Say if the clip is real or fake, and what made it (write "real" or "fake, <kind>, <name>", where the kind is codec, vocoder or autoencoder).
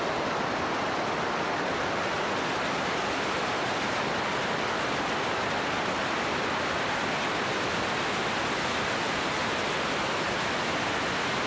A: real